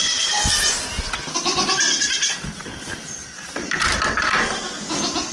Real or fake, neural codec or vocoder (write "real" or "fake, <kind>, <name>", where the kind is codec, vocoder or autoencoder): real